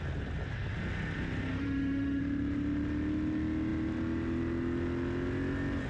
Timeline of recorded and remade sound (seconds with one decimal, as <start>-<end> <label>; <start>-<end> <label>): 0.0-1.5 recorded; 1.5-2.2 remade; 2.2-5.9 recorded

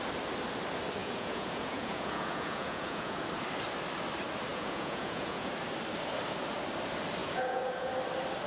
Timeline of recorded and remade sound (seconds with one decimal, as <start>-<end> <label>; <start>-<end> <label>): 0.0-1.0 recorded; 1.0-3.2 remade; 3.2-4.5 recorded; 4.5-5.5 remade; 5.5-7.2 recorded; 7.2-7.9 remade; 7.9-8.5 recorded